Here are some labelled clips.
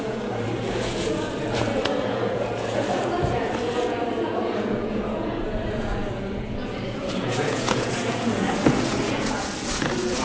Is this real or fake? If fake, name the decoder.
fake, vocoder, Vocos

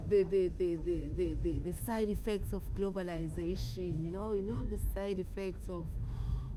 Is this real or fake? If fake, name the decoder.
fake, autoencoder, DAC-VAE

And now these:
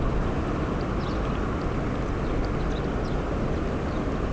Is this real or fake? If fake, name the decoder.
real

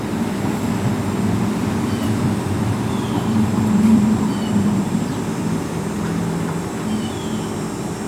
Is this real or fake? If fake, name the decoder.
fake, vocoder, BigVGAN v2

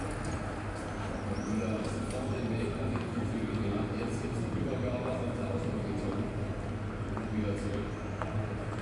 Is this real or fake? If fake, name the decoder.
real